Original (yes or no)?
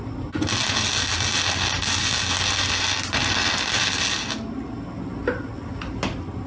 yes